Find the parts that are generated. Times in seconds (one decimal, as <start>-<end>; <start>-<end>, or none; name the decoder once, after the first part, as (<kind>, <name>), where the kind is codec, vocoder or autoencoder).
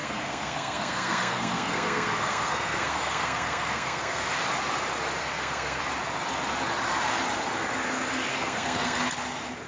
0.0-4.3 (codec, SNAC); 5.2-5.8; 8.3-9.0